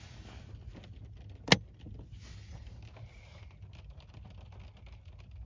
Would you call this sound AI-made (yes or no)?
no